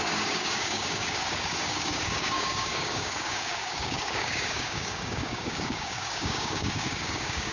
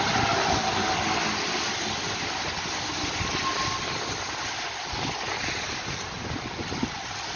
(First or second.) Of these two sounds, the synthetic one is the first